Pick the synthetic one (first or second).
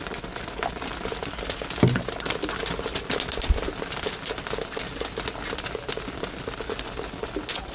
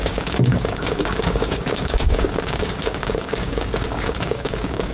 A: second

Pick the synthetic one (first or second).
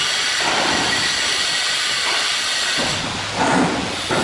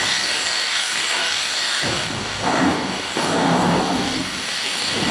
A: second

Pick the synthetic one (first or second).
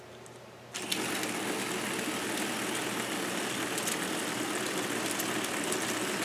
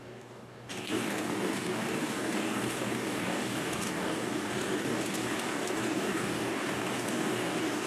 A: second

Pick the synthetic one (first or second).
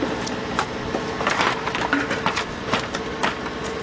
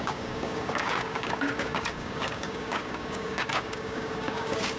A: second